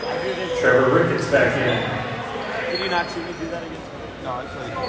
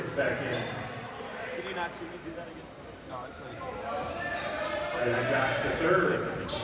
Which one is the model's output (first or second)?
second